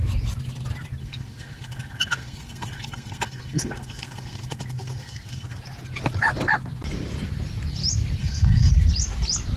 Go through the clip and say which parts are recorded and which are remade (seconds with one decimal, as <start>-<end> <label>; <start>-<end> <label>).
0.0-1.0 recorded; 1.0-5.6 remade; 5.6-8.2 recorded; 8.2-8.7 remade; 8.7-9.6 recorded